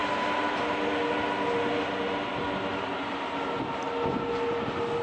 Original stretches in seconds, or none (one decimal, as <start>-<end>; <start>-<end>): 0.0-5.0

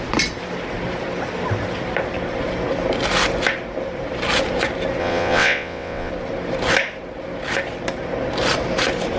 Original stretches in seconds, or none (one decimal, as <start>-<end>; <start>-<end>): 0.0-5.0; 6.1-9.2

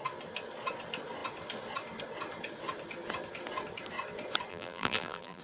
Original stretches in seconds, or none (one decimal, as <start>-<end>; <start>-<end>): 0.0-4.5

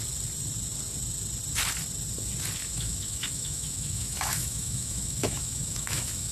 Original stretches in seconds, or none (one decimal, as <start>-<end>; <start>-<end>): 0.0-2.6

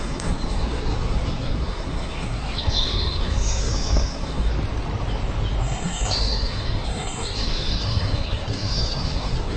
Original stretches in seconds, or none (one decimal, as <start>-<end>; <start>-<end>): 4.5-5.6

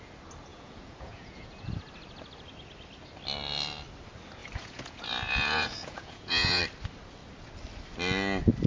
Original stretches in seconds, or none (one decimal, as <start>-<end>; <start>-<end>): 0.0-0.5; 1.7-4.4; 6.6-8.7

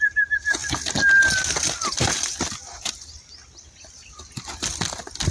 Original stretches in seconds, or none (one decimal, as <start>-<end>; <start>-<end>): 0.0-5.3